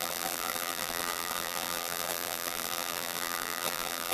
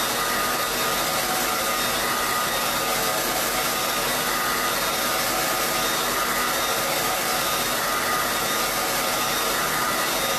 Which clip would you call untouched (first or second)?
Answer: second